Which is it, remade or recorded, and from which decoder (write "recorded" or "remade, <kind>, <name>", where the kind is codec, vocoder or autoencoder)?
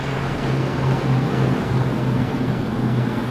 remade, codec, SNAC